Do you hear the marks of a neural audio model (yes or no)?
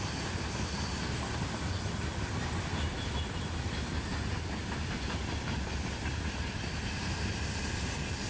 no